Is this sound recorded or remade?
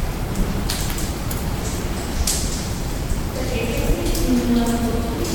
remade